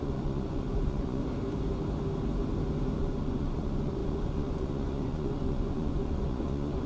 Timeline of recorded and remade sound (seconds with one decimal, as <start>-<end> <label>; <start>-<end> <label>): 0.0-1.2 remade; 1.2-3.0 recorded; 3.0-6.9 remade